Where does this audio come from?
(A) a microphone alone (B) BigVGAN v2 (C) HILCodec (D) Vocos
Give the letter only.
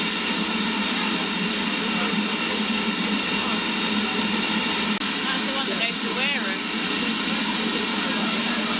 A